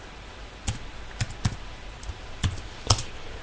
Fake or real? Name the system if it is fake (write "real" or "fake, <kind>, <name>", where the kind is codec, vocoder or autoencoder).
real